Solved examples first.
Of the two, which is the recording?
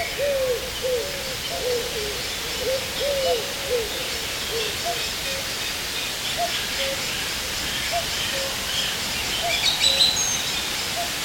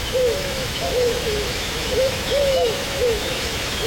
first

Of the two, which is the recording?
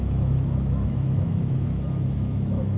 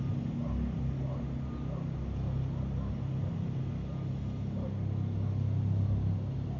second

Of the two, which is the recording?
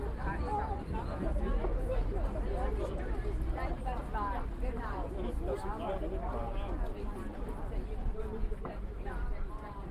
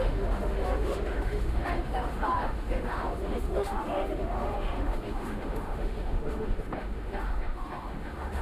first